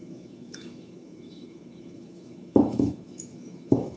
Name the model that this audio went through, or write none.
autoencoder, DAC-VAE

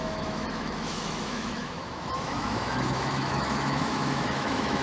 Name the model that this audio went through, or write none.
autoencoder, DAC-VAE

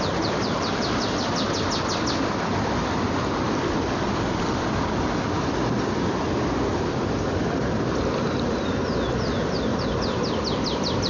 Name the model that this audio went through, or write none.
none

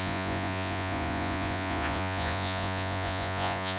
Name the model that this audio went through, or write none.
vocoder, Vocos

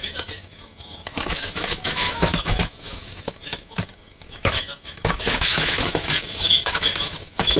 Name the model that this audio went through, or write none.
autoencoder, DAC-VAE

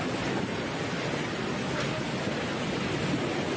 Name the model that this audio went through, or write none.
none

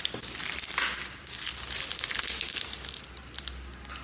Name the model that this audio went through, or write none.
none